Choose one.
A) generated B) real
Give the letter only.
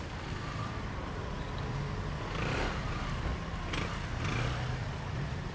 B